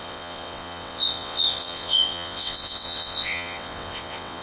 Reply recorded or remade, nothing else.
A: remade